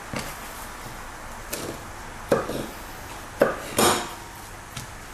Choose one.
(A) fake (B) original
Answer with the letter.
B